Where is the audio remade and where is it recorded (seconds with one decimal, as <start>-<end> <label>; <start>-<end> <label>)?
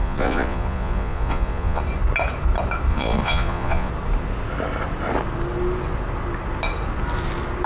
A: 0.0-1.8 remade; 1.8-2.9 recorded; 2.9-3.9 remade; 3.9-7.7 recorded